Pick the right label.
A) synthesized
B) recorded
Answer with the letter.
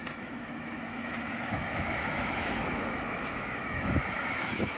A